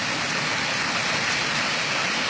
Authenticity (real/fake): real